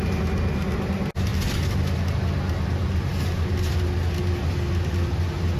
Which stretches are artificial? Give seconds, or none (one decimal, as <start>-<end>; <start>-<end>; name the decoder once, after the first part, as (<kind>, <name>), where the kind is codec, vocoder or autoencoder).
none